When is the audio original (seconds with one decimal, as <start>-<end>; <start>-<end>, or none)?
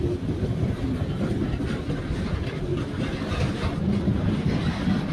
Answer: 0.0-5.1